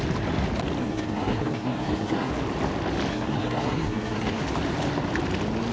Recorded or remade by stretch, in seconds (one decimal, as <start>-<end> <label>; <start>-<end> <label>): 0.0-0.8 recorded; 0.8-2.3 remade; 2.3-3.1 recorded; 3.1-4.4 remade; 4.4-5.7 recorded